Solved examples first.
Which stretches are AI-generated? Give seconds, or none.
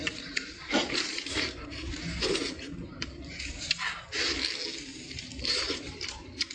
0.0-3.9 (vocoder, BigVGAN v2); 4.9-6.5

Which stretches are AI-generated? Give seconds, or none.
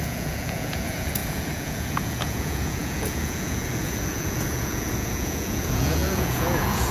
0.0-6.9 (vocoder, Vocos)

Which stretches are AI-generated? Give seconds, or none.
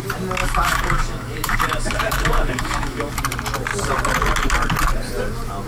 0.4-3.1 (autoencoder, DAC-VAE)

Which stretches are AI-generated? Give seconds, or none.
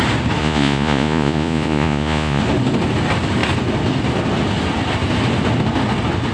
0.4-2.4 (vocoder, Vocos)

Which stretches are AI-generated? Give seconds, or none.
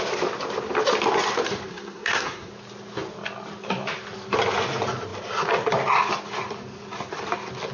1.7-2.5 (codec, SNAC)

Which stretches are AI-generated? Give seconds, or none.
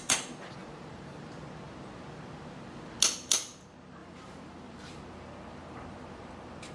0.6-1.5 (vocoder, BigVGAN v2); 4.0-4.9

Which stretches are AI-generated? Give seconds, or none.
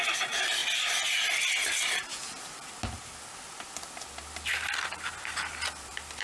0.0-0.6 (vocoder, BigVGAN v2); 1.6-2.1; 5.8-6.2